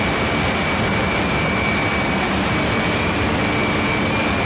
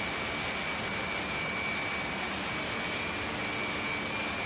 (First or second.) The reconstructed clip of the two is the first